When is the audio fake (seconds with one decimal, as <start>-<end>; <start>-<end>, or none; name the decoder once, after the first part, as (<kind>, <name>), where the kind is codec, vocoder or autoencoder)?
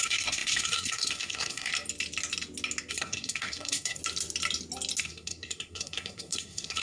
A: 0.0-1.7 (codec, SNAC); 2.9-4.0; 5.0-6.8